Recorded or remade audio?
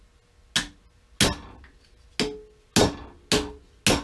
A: recorded